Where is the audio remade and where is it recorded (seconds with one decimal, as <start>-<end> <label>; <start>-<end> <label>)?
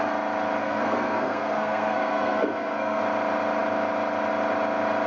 0.0-0.6 recorded; 0.6-3.0 remade; 3.0-5.1 recorded